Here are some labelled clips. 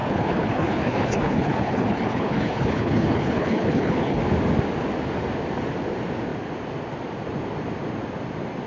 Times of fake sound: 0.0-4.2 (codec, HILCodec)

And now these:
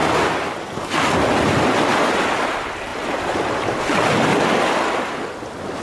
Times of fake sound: 0.0-0.8 (vocoder, BigVGAN v2); 2.9-3.8

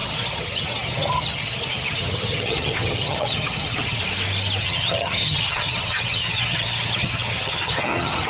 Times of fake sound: 0.0-4.0 (vocoder, HiFi-GAN); 4.6-8.3

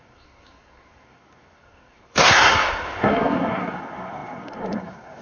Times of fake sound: 0.0-5.2 (codec, SNAC)

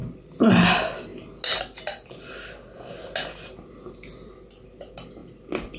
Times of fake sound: none